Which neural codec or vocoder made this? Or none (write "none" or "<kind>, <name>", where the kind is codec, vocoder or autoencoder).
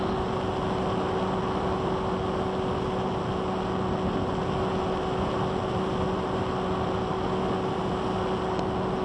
none